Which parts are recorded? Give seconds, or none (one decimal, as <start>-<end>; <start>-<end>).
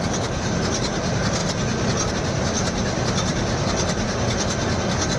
0.0-5.2